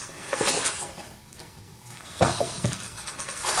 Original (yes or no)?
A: no